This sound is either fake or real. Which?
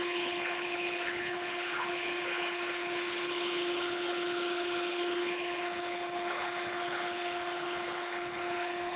fake